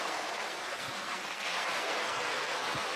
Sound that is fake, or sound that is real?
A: fake